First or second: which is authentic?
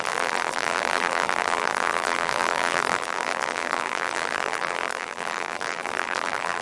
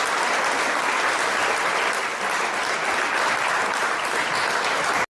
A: second